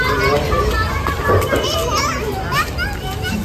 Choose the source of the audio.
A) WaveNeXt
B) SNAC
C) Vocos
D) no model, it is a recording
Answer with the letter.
D